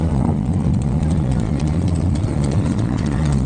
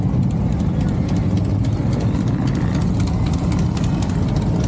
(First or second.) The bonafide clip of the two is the second